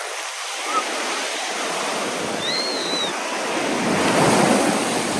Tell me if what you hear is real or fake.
real